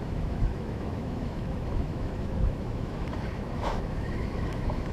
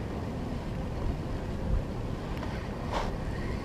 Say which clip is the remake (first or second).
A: first